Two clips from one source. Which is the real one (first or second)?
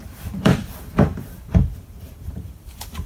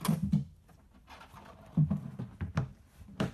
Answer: second